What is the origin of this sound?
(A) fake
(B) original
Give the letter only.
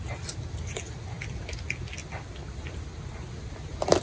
B